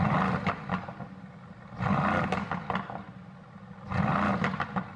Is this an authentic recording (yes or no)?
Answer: yes